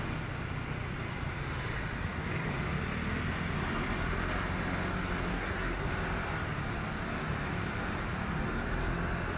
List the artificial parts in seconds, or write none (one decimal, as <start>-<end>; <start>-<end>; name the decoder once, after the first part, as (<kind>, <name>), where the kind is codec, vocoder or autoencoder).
5.3-5.9 (codec, SNAC)